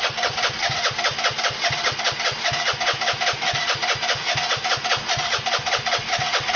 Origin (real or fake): real